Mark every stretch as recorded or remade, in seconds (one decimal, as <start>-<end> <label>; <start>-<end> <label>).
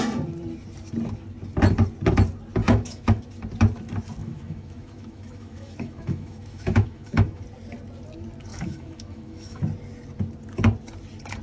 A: 0.0-2.6 recorded; 2.6-3.2 remade; 3.2-4.2 recorded; 4.2-7.4 remade; 7.4-8.5 recorded; 8.5-9.6 remade; 9.6-11.4 recorded